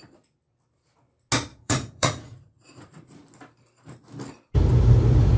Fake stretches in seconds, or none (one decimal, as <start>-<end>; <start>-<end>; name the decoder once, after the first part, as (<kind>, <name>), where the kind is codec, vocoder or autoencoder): 1.5-3.2 (vocoder, Vocos)